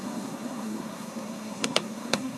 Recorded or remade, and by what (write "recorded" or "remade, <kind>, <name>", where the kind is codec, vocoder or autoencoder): remade, codec, SNAC